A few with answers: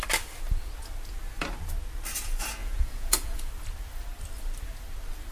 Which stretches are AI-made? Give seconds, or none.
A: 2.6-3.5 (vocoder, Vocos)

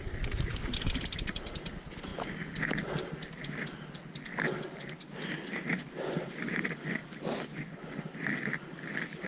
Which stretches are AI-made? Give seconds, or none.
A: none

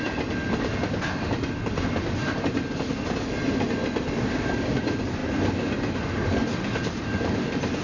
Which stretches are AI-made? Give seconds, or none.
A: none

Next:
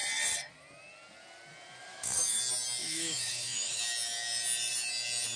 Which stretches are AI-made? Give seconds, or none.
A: 1.8-2.4 (autoencoder, DAC-VAE); 2.8-3.8

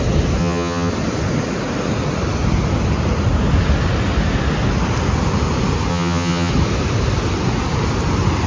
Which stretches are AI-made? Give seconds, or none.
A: 0.4-0.9 (vocoder, HiFi-GAN); 5.9-6.5

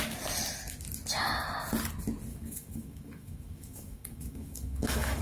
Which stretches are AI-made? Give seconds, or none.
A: 2.3-5.2 (autoencoder, DAC-VAE)

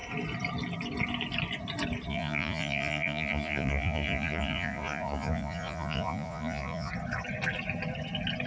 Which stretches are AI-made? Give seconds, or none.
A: 2.1-6.9 (vocoder, Vocos)